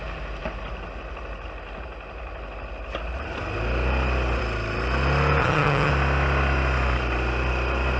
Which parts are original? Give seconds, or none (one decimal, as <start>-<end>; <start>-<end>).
0.0-5.4; 5.9-8.0